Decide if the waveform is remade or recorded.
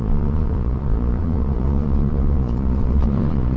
remade